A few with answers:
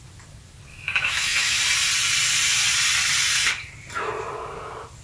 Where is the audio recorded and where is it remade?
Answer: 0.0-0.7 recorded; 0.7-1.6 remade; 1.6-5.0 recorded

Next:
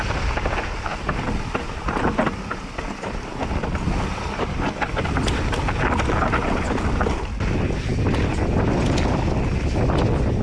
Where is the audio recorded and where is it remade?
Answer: 0.0-10.4 recorded